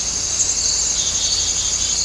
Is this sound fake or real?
real